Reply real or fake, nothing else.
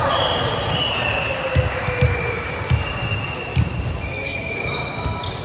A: real